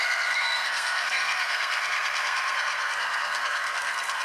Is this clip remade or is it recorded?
remade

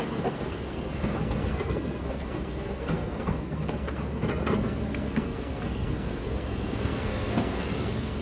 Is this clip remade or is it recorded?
remade